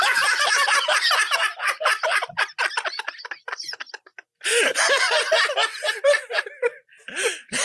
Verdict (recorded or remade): remade